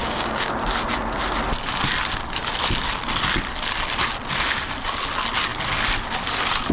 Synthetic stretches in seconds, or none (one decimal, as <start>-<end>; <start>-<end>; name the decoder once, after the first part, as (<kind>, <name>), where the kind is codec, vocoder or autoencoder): 0.0-0.5 (codec, DAC)